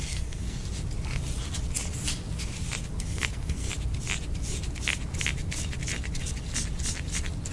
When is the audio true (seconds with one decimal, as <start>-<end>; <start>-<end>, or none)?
0.6-3.0; 3.7-7.5